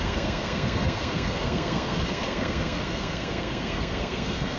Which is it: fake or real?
fake